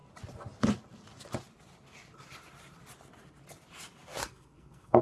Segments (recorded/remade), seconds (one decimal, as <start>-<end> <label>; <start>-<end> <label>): 0.0-4.2 recorded; 4.2-5.0 remade